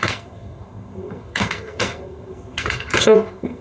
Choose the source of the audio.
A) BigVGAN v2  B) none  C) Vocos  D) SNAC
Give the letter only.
D